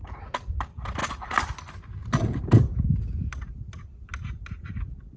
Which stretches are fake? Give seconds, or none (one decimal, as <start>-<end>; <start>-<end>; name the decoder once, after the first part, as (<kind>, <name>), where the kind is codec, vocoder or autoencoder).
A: none